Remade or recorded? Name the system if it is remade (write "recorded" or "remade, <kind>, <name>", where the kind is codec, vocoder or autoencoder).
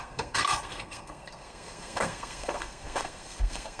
remade, codec, SNAC